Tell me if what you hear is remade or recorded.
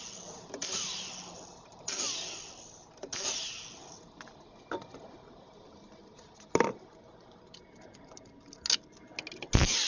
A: recorded